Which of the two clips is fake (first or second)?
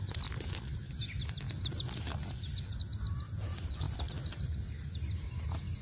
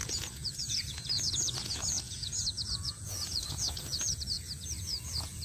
second